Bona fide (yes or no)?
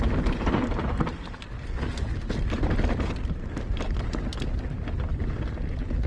yes